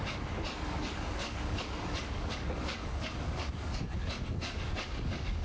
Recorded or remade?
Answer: remade